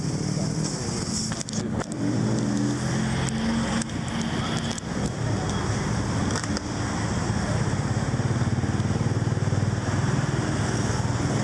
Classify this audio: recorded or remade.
recorded